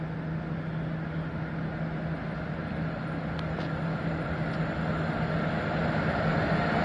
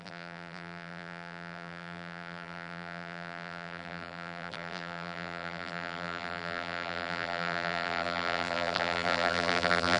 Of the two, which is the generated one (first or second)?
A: second